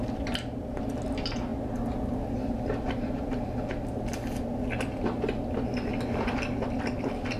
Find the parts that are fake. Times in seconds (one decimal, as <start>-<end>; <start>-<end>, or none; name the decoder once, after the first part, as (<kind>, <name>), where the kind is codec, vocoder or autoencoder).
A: none